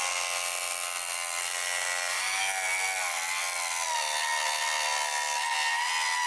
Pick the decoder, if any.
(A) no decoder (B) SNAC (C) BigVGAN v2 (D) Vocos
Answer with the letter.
A